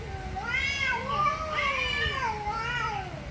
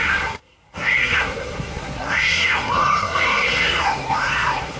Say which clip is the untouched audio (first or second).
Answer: first